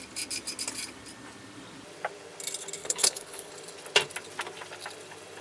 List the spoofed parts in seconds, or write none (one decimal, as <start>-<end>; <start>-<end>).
2.8-3.5